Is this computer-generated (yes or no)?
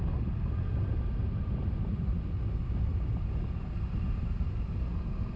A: no